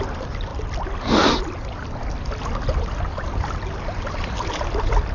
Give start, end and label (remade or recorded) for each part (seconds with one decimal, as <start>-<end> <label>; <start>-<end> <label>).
0.0-0.5 remade; 0.5-1.4 recorded; 1.4-2.0 remade; 2.0-4.0 recorded; 4.0-5.1 remade